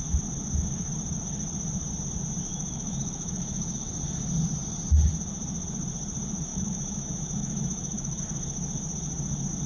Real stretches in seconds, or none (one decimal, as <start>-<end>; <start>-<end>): 0.0-2.5; 3.8-6.5; 8.2-9.7